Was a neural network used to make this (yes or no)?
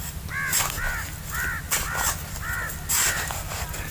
no